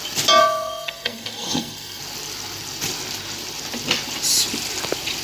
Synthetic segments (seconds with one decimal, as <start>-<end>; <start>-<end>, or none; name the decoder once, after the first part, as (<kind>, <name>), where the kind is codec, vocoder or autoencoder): 0.4-2.0 (codec, SNAC)